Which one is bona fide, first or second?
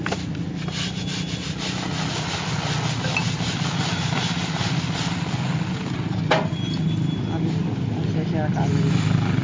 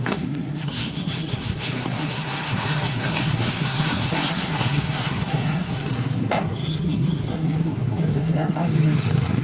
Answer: first